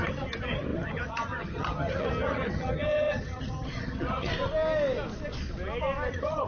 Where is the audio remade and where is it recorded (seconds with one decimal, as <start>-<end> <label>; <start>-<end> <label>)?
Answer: 0.0-4.3 remade; 4.3-6.1 recorded; 6.1-6.5 remade

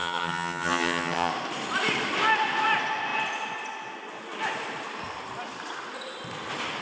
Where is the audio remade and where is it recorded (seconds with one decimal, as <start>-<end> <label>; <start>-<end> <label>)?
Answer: 0.0-1.3 remade; 1.3-6.8 recorded

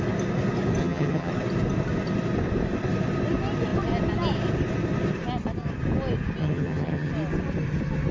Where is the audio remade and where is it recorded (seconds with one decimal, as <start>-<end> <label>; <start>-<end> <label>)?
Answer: 0.0-0.8 recorded; 0.8-1.3 remade; 1.3-6.4 recorded; 6.4-7.1 remade; 7.1-8.1 recorded

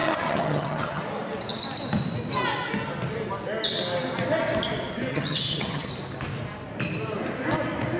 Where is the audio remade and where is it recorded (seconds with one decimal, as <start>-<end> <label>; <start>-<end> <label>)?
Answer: 0.0-1.0 remade; 1.0-5.1 recorded; 5.1-5.9 remade; 5.9-8.0 recorded